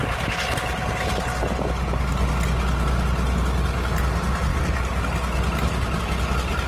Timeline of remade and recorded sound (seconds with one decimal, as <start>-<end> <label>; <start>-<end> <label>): 0.0-6.7 recorded